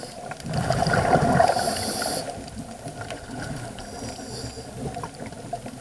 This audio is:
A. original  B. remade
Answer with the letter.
A